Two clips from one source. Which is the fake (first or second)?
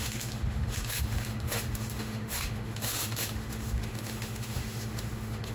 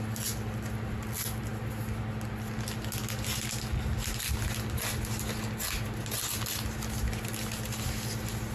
first